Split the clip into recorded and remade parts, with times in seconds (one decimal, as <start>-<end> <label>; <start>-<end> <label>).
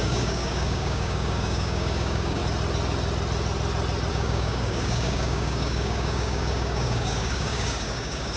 0.0-2.4 remade; 2.4-4.1 recorded; 4.1-8.4 remade